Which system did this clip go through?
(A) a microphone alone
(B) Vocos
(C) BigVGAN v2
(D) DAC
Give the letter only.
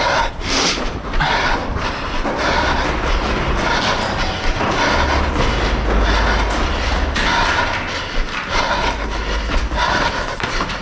A